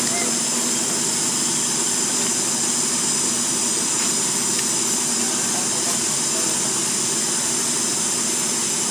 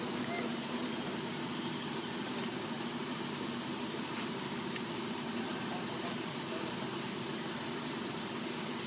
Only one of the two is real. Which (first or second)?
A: first